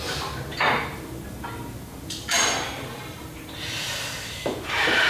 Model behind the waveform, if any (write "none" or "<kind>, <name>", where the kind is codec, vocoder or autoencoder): vocoder, BigVGAN v2